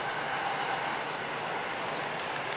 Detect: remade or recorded recorded